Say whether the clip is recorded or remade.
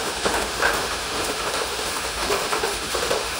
remade